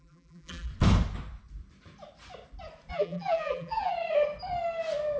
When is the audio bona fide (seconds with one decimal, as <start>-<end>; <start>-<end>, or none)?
0.7-2.9; 3.9-5.2